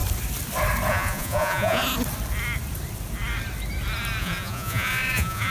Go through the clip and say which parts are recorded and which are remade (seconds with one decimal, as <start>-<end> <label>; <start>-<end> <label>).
0.0-0.9 recorded; 0.9-1.8 remade; 1.8-4.2 recorded; 4.2-5.5 remade